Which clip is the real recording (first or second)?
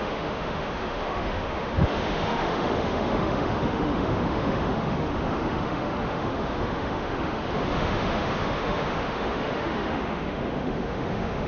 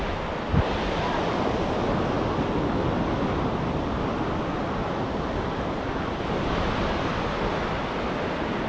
second